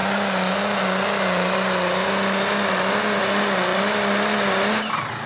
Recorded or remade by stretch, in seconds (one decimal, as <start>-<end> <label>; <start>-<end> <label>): 0.0-5.3 recorded